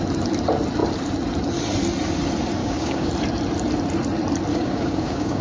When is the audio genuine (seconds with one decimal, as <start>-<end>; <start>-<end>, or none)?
0.0-2.6; 3.1-4.5